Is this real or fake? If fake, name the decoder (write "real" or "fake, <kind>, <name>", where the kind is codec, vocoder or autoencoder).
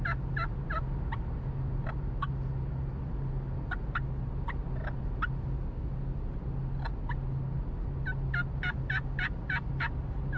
real